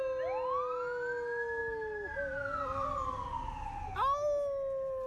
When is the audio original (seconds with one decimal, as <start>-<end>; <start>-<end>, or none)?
0.0-5.1